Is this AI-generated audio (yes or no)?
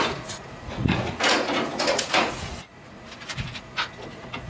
yes